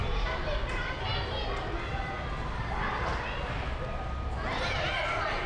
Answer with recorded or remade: recorded